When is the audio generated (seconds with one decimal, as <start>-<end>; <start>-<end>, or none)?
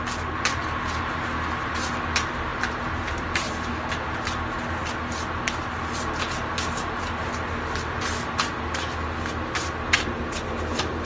2.5-3.7